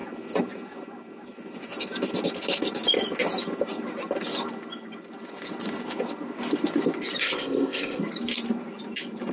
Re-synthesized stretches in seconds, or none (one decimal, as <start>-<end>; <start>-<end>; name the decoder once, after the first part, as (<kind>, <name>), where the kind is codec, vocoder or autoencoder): 7.2-8.0 (codec, ZipCodec)